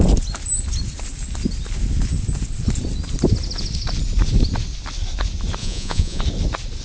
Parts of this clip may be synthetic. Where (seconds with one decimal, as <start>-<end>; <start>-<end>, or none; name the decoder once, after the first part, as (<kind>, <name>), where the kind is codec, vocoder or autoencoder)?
5.6-6.2 (vocoder, Vocos)